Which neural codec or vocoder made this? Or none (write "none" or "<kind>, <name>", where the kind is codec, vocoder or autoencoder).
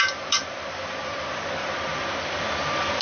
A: vocoder, BigVGAN v2